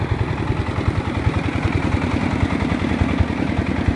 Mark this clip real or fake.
real